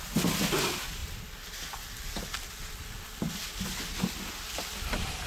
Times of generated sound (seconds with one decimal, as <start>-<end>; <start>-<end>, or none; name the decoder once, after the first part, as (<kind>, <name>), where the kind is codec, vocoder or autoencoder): none